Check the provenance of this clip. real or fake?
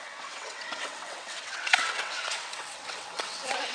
fake